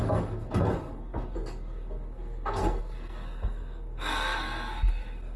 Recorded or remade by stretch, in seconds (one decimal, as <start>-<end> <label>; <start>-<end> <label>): 0.0-5.4 remade